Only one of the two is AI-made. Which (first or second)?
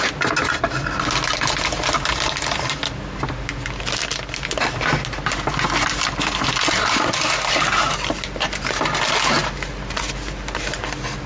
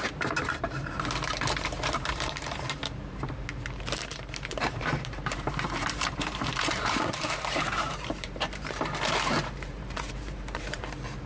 second